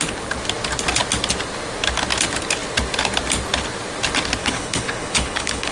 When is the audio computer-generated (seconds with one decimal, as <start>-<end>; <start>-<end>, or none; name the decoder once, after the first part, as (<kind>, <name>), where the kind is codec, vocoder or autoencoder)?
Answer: 4.4-5.7 (codec, HILCodec)